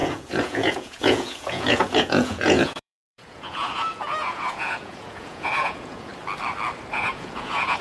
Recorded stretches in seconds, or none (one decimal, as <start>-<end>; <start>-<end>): 6.1-6.9